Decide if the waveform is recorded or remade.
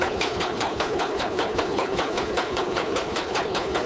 remade